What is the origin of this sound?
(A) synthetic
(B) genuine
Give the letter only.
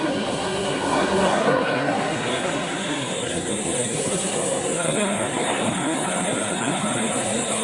A